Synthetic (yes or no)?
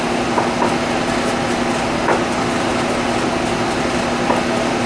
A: no